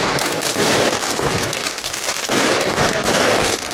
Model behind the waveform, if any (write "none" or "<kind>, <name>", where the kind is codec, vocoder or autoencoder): codec, DAC